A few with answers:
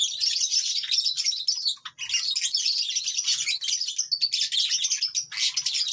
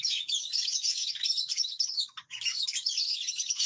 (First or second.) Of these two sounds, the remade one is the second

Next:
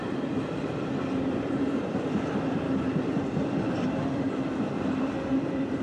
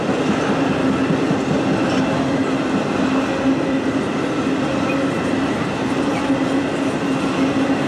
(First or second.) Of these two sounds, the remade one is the first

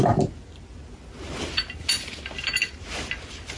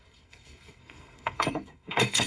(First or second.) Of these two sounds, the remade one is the second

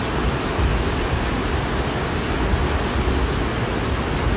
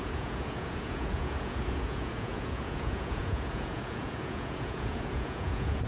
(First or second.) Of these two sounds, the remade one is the second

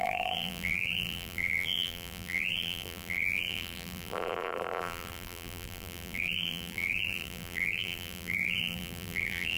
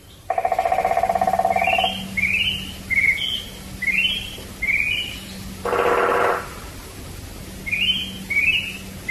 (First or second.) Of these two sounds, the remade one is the first